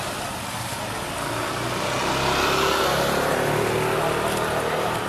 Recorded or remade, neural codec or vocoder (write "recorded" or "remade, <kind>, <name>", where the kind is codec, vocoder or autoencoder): recorded